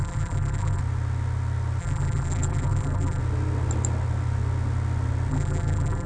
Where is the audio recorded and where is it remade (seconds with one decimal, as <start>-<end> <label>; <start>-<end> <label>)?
0.0-0.8 remade; 0.8-1.8 recorded; 1.8-3.2 remade; 3.2-5.3 recorded; 5.3-6.1 remade